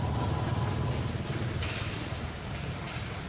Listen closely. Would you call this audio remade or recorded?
recorded